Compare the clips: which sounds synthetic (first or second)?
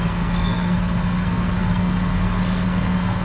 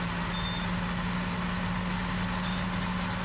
first